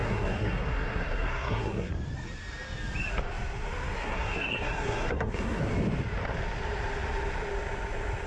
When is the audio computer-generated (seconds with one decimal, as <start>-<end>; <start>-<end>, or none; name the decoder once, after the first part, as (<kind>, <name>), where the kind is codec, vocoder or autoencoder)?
0.0-1.9 (codec, SNAC); 4.0-5.6